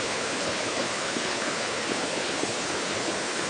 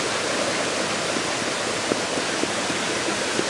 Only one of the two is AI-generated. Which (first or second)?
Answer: first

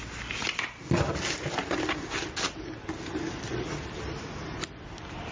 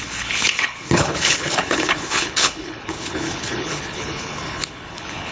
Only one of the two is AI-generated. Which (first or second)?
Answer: second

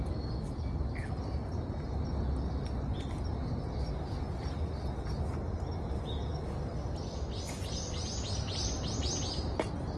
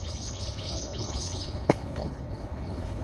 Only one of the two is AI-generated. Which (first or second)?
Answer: second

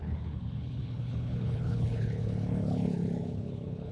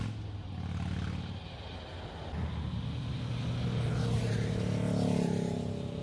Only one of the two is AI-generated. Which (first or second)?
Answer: first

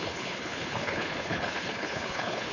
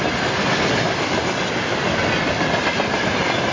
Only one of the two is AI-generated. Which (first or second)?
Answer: first